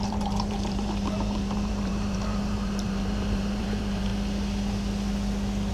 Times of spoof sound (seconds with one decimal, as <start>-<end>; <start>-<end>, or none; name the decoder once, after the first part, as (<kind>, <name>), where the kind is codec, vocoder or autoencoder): 0.0-4.1 (vocoder, BigVGAN v2)